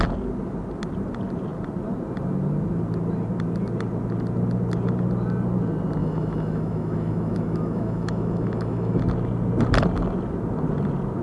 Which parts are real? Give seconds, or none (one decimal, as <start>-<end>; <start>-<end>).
0.0-6.0; 9.0-11.2